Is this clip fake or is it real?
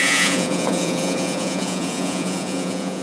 fake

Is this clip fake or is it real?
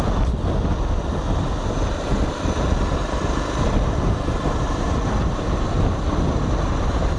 real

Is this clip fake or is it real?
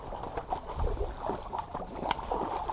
real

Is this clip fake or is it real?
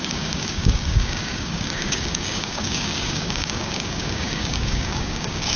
fake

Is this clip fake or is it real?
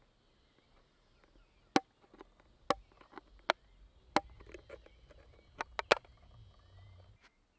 real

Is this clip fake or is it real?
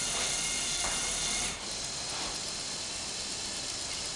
real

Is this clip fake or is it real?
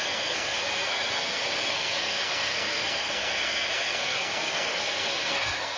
fake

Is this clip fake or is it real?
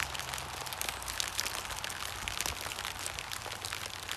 real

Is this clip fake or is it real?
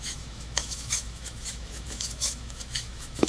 fake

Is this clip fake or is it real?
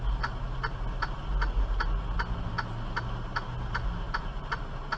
real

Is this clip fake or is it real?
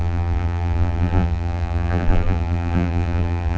fake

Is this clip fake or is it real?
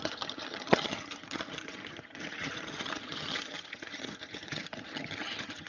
fake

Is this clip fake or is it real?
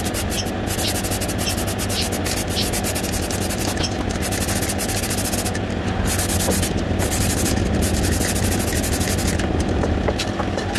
real